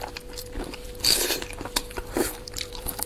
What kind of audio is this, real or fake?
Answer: fake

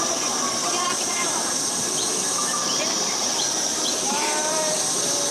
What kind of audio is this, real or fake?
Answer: fake